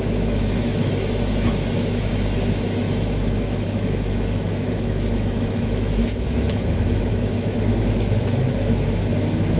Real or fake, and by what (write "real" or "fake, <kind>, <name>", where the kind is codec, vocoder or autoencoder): fake, autoencoder, DAC-VAE